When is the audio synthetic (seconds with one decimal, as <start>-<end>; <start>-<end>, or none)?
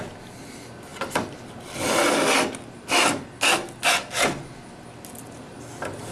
none